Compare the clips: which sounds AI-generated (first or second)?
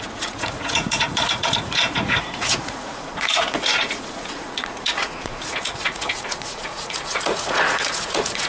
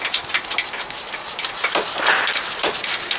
first